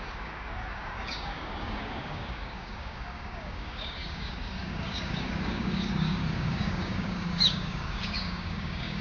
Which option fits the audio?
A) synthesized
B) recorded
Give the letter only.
A